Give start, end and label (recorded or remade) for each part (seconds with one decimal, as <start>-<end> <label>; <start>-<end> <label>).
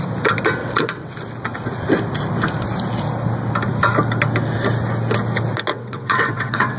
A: 0.0-0.6 recorded; 0.6-1.1 remade; 1.1-5.7 recorded; 5.7-6.8 remade